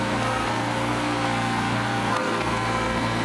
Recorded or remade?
remade